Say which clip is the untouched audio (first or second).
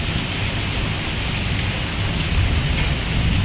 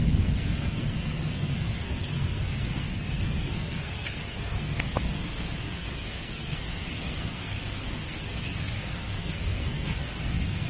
first